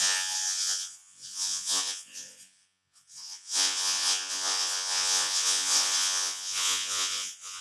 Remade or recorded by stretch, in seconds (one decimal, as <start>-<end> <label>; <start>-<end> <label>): 0.0-7.6 remade